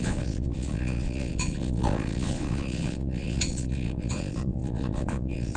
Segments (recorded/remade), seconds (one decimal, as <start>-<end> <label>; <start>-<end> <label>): 0.0-5.6 remade